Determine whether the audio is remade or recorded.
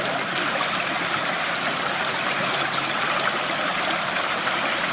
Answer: recorded